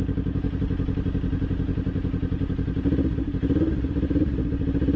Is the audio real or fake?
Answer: real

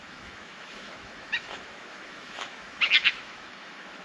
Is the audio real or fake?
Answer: fake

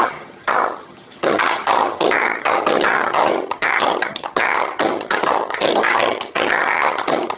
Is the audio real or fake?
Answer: fake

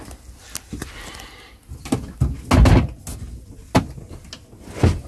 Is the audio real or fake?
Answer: real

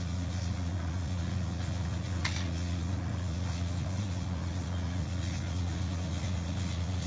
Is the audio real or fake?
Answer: fake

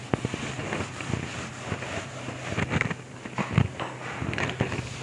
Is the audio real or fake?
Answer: real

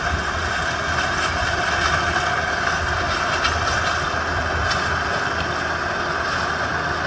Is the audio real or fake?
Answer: real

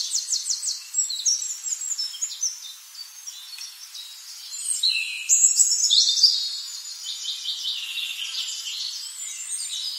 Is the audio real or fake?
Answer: real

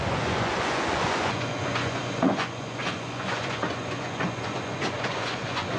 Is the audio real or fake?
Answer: fake